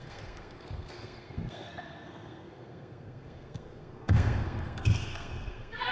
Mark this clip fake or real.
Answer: fake